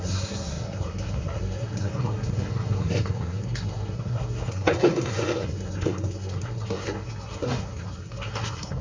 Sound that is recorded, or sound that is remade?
remade